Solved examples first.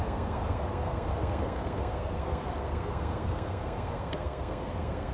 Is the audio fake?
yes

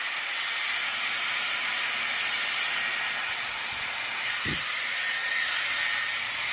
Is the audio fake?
no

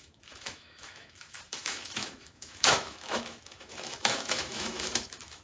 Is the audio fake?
yes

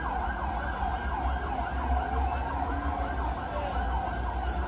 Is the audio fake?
no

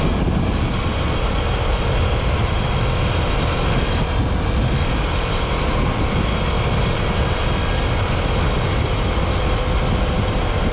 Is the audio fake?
no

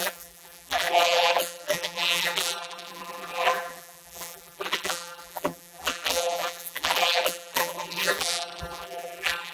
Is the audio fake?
yes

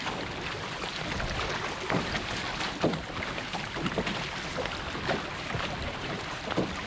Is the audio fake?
no